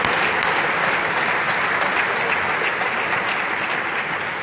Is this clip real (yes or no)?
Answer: yes